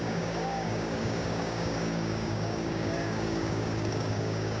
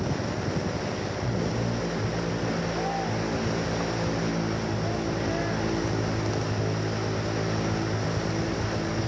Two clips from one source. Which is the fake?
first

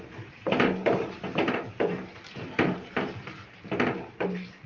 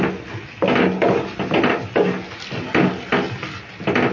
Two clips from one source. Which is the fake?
first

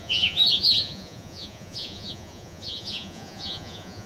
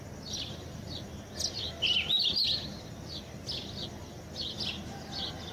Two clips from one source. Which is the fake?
first